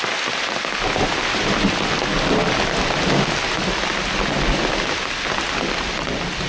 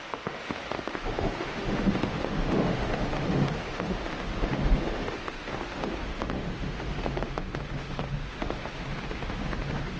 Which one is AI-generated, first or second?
second